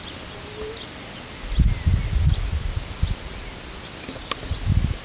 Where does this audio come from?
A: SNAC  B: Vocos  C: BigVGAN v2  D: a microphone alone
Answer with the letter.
D